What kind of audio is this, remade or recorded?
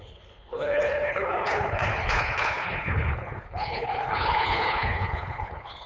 remade